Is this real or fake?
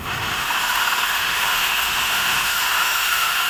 fake